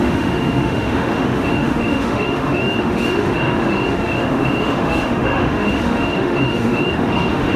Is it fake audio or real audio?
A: fake